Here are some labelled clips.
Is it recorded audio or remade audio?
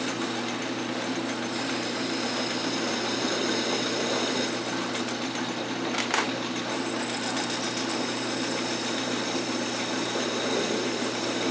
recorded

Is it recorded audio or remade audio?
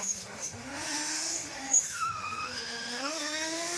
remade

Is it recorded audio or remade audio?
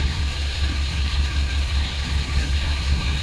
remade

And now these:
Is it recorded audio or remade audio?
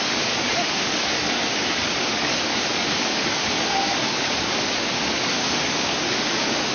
remade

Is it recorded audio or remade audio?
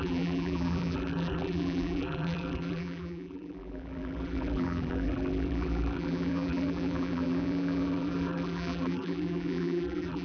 remade